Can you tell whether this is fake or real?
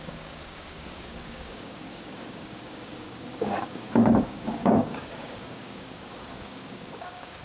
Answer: fake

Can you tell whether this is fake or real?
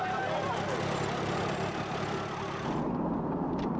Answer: real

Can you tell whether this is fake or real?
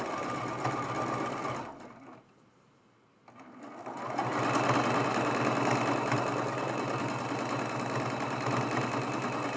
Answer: real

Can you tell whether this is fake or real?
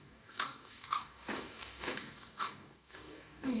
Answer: fake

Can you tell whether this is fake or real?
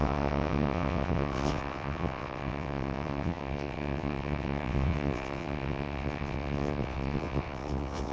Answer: fake